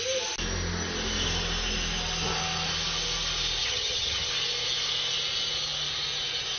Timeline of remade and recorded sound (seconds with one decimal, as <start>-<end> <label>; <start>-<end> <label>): 0.0-3.6 recorded; 3.6-4.3 remade; 4.3-6.6 recorded